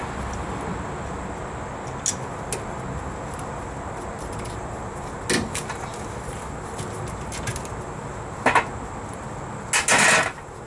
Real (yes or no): yes